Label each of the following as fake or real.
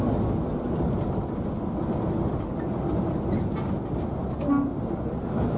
real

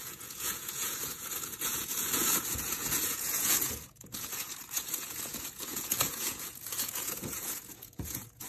fake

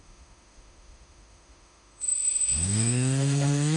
fake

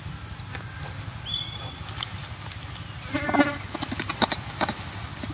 real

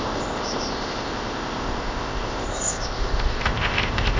fake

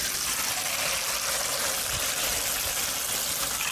real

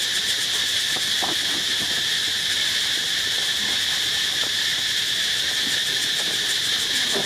real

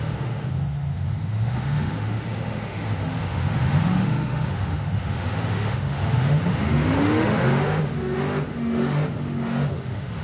fake